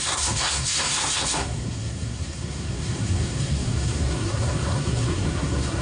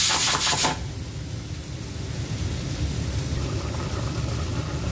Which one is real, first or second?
second